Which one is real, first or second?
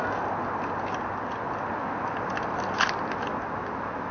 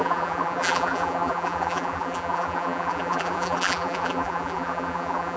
first